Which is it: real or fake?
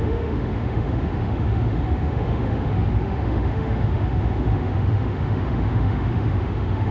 fake